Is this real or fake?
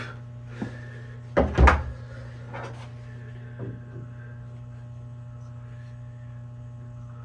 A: real